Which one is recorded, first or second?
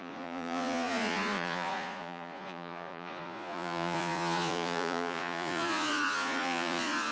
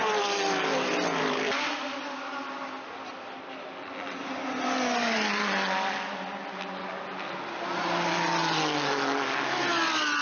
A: second